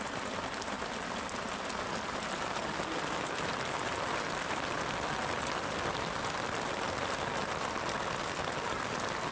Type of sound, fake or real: real